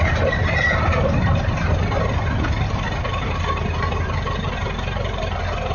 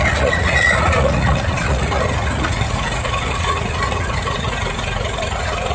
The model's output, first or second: second